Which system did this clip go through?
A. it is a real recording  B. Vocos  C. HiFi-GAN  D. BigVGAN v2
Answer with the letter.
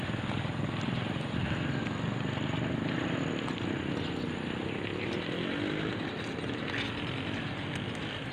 A